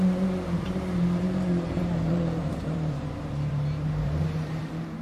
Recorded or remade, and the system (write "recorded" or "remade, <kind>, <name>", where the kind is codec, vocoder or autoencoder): remade, vocoder, BigVGAN v2